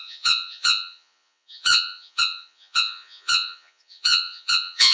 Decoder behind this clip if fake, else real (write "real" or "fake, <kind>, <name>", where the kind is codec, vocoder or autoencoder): fake, vocoder, Vocos